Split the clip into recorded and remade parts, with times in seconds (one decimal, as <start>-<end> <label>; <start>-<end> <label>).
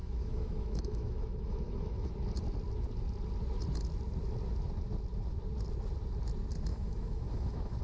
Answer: 0.0-2.1 remade; 2.1-6.7 recorded; 6.7-7.8 remade